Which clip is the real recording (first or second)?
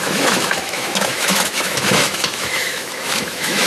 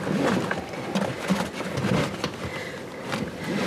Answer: second